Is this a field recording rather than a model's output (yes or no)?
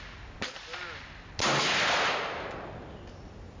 yes